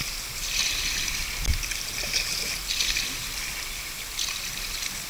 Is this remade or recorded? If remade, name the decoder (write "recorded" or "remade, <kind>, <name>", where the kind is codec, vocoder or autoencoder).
recorded